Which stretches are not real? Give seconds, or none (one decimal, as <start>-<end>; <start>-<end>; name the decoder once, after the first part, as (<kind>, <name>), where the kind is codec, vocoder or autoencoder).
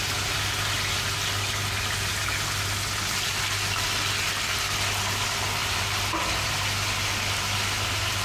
none